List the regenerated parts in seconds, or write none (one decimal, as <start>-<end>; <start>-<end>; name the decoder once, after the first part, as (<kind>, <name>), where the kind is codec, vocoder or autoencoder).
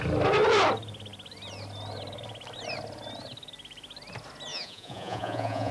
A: 4.5-5.7 (vocoder, Vocos)